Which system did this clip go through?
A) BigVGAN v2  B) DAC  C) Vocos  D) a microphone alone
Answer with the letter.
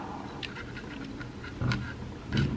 D